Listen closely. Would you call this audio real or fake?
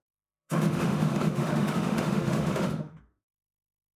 fake